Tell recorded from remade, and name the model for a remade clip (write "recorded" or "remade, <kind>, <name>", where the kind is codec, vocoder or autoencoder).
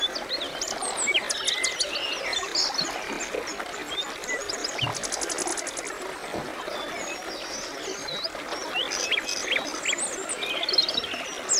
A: recorded